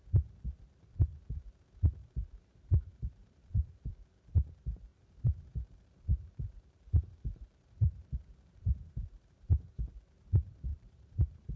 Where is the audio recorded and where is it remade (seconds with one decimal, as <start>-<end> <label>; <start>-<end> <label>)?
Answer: 0.0-2.0 recorded; 2.0-3.9 remade; 3.9-4.9 recorded; 4.9-9.7 remade; 9.7-10.7 recorded; 10.7-11.6 remade